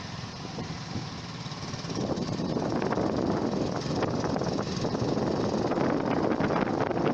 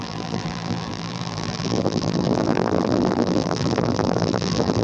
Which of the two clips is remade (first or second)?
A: second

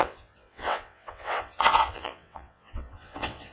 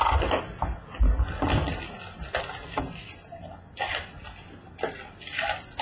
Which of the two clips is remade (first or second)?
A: first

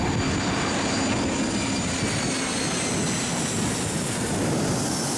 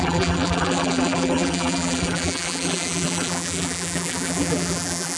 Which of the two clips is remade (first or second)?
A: second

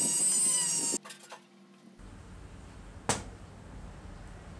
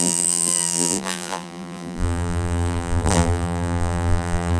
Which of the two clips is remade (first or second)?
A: second